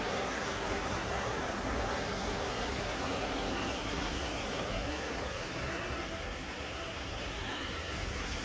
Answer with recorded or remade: remade